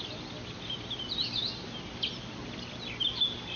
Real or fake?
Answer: real